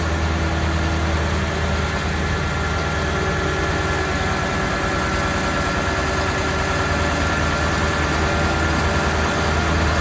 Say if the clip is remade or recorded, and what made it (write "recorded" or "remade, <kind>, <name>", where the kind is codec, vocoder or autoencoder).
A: recorded